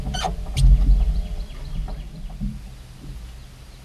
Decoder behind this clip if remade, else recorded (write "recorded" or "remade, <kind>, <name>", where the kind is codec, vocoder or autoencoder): recorded